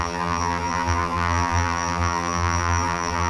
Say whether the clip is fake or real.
fake